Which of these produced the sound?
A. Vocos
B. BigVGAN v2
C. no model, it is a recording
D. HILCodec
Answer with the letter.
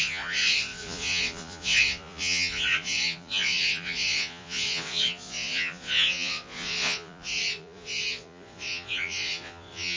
A